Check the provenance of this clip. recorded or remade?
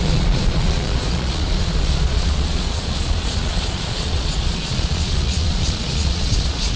remade